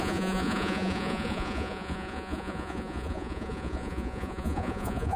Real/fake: fake